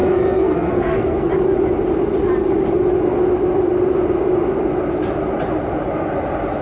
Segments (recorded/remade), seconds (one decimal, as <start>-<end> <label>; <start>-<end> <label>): 0.0-1.3 remade; 1.3-6.6 recorded